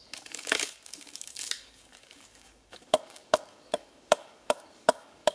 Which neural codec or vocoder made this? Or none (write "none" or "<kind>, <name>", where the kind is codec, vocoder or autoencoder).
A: codec, DAC